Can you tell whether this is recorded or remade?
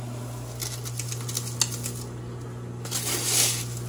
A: recorded